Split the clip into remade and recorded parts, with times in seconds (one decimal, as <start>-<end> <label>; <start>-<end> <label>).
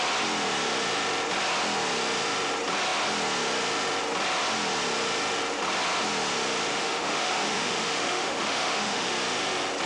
0.0-6.7 recorded; 6.7-9.1 remade; 9.1-9.9 recorded